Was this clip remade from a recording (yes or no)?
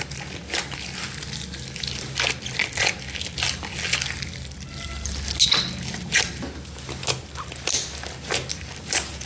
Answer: no